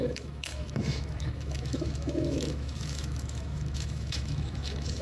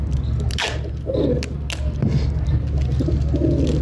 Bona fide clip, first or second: second